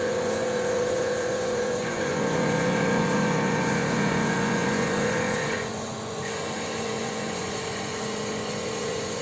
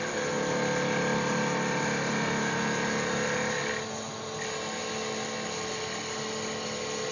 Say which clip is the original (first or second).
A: second